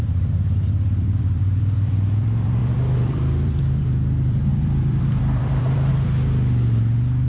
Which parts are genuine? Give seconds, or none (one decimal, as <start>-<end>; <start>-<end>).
none